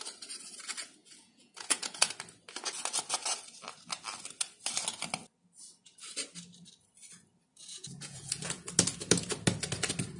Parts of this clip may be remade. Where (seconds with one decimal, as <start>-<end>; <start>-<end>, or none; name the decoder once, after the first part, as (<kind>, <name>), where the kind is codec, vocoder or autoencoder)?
1.0-2.1 (vocoder, Vocos); 7.5-8.7